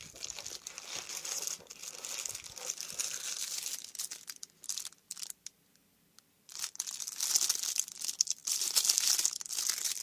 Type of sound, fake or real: real